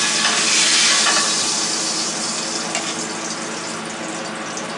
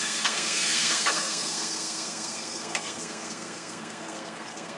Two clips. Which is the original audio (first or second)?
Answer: first